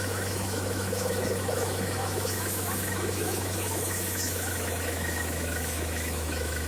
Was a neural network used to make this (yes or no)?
yes